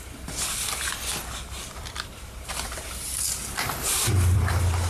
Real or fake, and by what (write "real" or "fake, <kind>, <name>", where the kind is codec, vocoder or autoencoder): fake, vocoder, BigVGAN v2